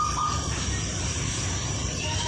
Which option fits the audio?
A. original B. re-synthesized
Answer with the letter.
A